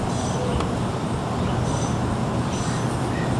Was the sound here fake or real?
real